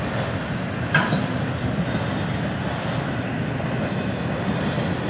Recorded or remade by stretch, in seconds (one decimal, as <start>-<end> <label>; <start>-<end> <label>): 0.0-5.1 recorded